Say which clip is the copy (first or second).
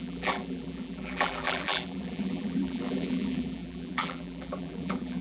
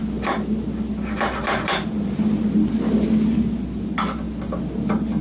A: first